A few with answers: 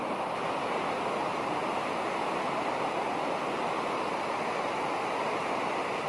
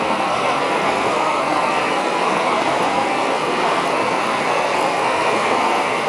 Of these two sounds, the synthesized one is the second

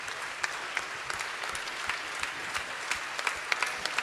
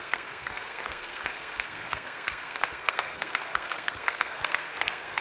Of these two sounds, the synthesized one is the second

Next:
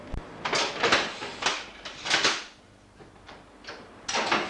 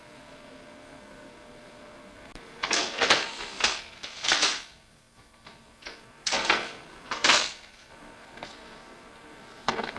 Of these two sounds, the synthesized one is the second